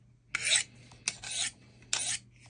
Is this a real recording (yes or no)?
yes